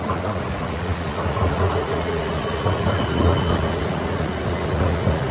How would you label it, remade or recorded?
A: remade